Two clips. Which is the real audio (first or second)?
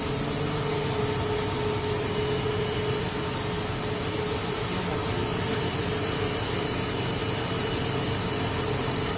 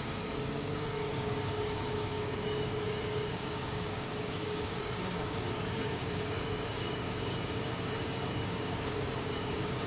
first